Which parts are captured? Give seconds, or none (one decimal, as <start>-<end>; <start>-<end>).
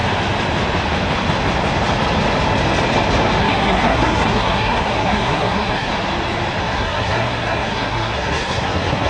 0.0-3.4; 5.9-6.6